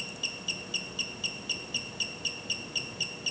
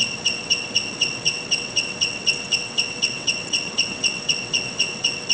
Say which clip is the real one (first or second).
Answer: first